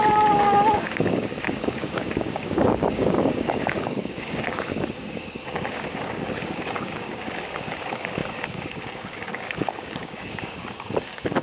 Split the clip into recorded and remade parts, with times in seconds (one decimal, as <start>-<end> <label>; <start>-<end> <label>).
0.0-11.4 remade